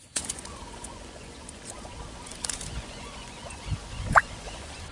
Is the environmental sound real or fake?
fake